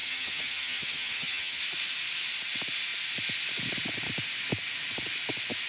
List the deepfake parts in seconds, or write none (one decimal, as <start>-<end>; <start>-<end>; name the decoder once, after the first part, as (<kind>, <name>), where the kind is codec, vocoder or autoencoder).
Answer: 0.0-1.6 (vocoder, HiFi-GAN)